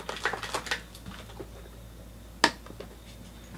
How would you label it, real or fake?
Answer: real